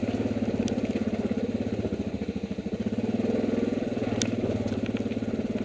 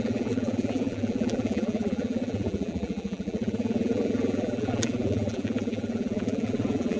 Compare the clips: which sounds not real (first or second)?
second